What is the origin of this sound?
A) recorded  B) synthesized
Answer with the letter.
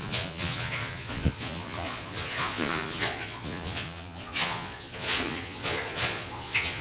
B